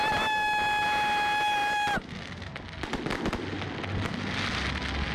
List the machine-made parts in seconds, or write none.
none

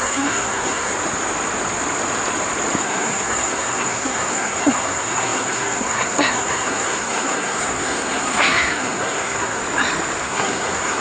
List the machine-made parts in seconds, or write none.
0.0-0.9 (codec, SNAC); 2.8-9.6; 10.2-11.0

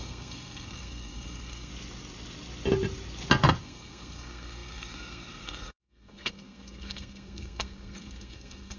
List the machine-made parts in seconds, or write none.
0.0-1.7 (codec, SNAC); 3.6-8.8

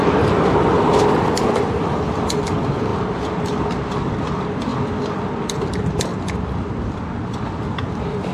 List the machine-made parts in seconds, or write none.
none

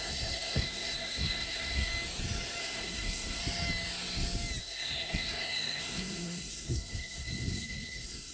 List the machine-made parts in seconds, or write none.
0.0-1.9 (codec, SNAC); 2.6-3.4; 4.6-8.3

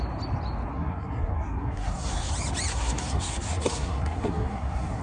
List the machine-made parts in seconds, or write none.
0.7-2.3 (codec, SNAC); 2.7-5.0

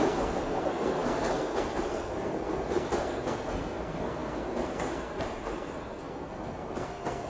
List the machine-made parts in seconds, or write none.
0.0-7.3 (codec, SNAC)